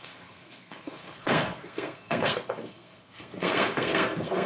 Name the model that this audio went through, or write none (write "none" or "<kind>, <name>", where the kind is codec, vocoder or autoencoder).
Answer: codec, SNAC